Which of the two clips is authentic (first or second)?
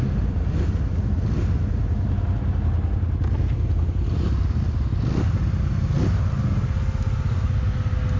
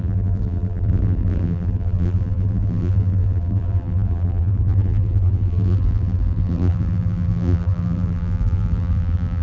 first